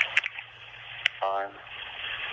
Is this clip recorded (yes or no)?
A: yes